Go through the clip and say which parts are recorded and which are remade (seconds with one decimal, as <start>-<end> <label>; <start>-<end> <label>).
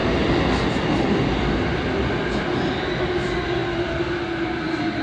0.0-5.0 recorded